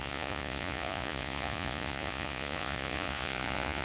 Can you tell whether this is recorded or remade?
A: remade